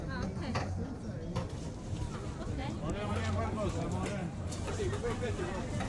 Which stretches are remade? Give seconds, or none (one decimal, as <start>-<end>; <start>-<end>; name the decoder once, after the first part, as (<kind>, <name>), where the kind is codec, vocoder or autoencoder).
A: 2.6-3.1 (vocoder, BigVGAN v2); 4.2-5.4